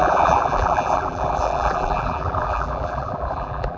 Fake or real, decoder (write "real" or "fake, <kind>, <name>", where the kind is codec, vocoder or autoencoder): fake, vocoder, BigVGAN v2